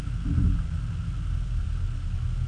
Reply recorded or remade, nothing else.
recorded